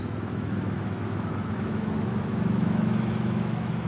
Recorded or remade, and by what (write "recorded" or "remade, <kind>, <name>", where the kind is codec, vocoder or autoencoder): remade, autoencoder, DAC-VAE